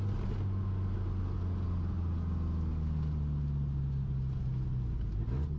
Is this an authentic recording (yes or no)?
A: yes